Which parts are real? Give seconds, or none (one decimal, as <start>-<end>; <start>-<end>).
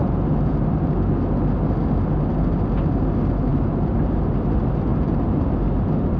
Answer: 0.0-3.5; 4.3-4.9; 5.5-6.2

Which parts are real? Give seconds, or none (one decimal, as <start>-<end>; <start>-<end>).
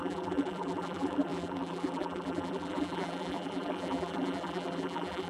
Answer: none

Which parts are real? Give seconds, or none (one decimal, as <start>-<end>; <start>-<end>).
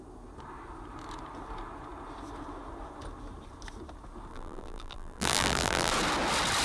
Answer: 0.0-4.3; 5.9-6.6